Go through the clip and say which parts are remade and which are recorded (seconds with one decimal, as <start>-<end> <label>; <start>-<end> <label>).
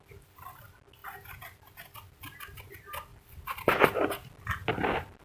0.0-3.1 recorded; 3.1-4.0 remade; 4.0-5.2 recorded